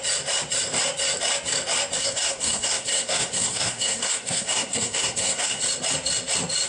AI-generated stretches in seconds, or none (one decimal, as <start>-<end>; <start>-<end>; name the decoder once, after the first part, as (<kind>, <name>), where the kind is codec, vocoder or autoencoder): 2.0-5.6 (codec, SNAC)